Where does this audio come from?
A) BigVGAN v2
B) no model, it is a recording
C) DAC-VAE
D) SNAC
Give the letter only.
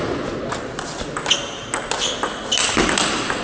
B